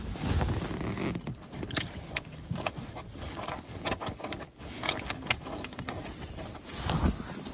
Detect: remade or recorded recorded